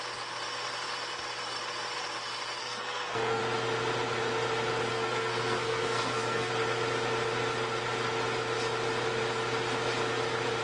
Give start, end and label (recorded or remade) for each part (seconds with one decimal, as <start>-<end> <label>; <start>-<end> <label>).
0.0-2.6 recorded; 2.6-3.4 remade; 3.4-4.9 recorded; 4.9-6.5 remade; 6.5-10.6 recorded